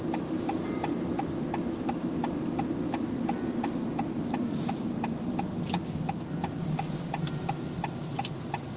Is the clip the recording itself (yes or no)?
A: yes